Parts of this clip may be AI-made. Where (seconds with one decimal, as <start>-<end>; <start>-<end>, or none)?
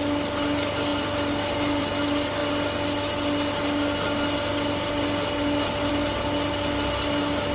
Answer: 0.9-1.9